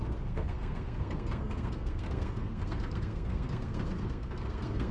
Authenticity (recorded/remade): remade